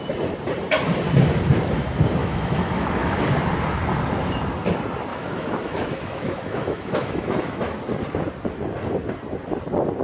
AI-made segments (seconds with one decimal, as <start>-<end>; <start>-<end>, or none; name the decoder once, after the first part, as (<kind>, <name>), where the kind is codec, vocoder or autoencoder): 2.2-3.2 (autoencoder, DAC-VAE); 5.1-7.6